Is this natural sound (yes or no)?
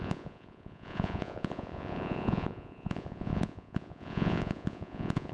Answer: no